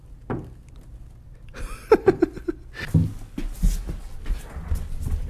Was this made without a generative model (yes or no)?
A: yes